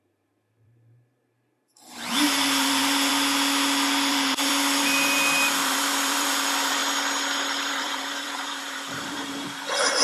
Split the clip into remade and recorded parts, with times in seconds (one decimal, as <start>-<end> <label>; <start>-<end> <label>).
0.0-3.1 remade; 3.1-4.1 recorded; 4.1-6.8 remade; 6.8-7.7 recorded; 7.7-10.0 remade